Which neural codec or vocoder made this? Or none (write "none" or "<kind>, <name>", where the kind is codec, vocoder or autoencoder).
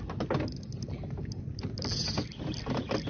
none